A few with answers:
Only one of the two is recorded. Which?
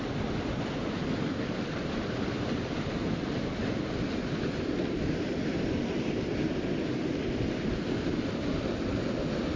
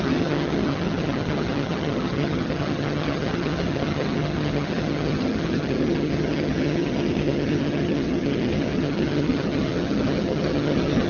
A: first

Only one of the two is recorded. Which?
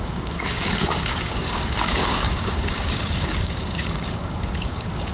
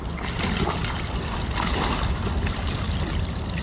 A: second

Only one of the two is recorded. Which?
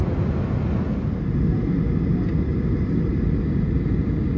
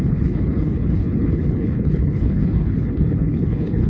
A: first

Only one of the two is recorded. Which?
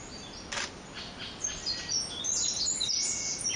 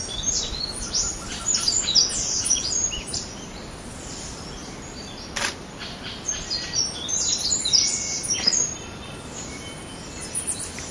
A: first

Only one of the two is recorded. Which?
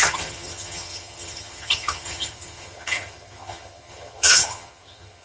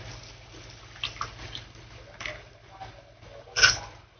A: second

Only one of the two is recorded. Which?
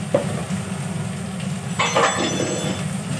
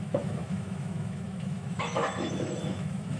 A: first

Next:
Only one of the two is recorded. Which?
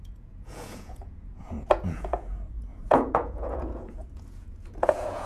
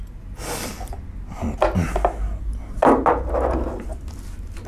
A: second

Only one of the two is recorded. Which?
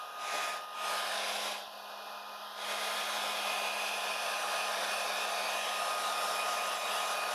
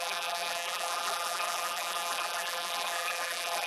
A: first